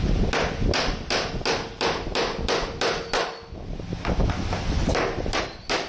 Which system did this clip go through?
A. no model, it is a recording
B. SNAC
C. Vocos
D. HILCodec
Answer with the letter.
A